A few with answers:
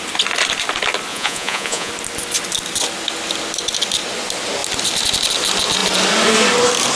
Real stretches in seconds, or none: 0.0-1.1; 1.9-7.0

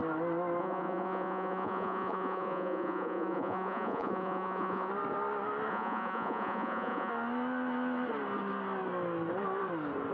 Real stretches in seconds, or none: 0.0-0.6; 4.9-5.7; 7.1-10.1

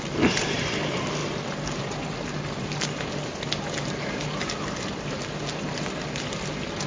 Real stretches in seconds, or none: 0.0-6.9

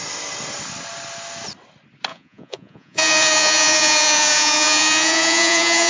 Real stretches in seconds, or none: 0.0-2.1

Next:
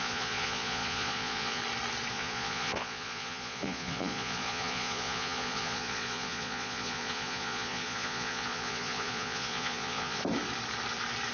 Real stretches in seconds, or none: 1.6-2.1; 10.2-11.3

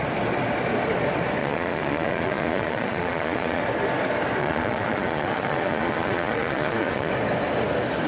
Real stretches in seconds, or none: 0.0-1.4; 3.6-4.4; 7.1-8.1

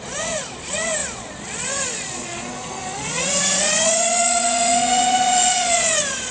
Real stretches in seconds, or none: none

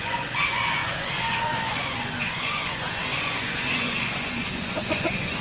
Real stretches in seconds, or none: none